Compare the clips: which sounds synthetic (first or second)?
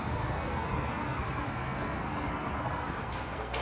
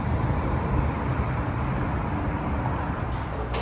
first